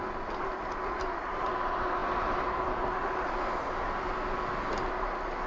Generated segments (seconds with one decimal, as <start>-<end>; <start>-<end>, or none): none